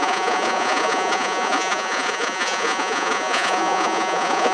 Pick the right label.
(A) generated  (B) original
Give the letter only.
A